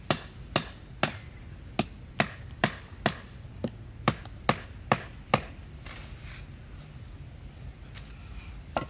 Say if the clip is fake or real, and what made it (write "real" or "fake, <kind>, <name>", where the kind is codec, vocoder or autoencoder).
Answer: real